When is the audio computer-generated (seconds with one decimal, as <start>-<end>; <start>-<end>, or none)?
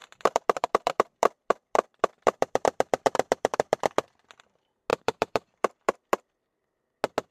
0.0-4.4; 4.9-6.8